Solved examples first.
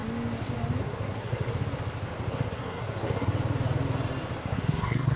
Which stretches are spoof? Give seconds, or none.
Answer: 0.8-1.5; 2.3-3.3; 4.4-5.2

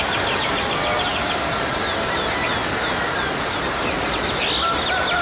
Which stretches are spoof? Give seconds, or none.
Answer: none

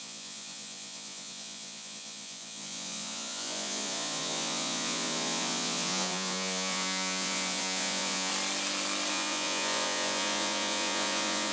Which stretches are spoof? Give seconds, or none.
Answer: 0.0-8.3; 9.1-11.5